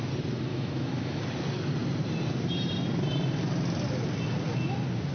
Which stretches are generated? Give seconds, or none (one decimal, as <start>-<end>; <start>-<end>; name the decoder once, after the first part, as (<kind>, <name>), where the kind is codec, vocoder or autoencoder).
0.5-1.2 (autoencoder, DAC-VAE)